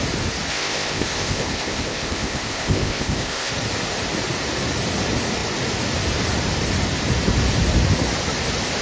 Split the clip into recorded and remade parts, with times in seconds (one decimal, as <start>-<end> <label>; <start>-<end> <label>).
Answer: 0.0-0.5 recorded; 0.5-3.5 remade; 3.5-8.8 recorded